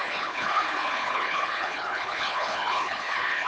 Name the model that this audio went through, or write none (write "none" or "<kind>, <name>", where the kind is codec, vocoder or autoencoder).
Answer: codec, HILCodec